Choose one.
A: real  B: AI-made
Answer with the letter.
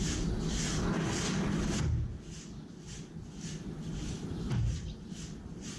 A